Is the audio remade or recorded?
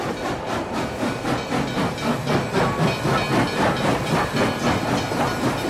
recorded